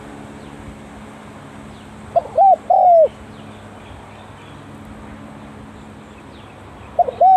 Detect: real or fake real